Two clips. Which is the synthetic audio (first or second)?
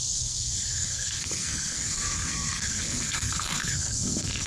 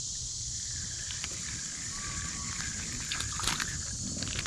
first